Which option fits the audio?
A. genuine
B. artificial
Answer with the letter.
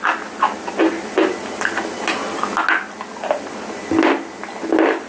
A